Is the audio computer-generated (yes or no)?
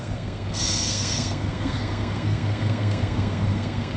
yes